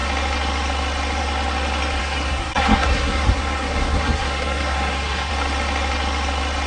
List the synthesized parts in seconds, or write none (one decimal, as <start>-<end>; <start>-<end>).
2.0-5.3